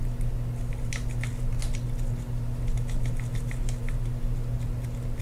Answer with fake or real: real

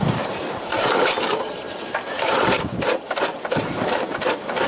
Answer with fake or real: fake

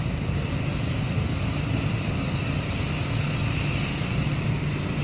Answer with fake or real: real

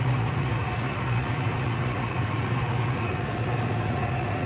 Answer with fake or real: fake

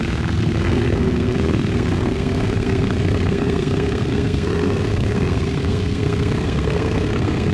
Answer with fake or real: fake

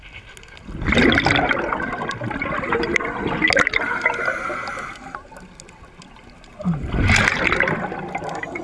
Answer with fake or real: real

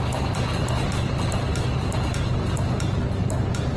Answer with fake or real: real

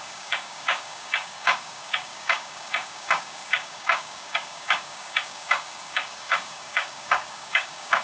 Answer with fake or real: fake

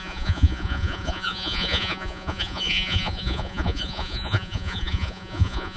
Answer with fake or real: fake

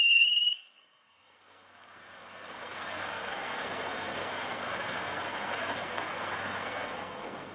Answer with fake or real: fake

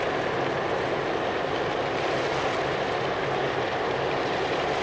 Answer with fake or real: real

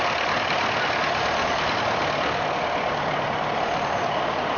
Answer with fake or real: real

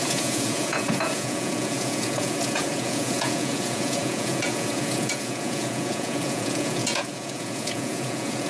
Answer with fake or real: fake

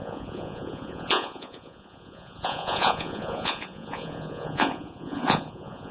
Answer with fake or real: fake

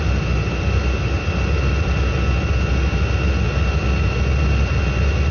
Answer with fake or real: real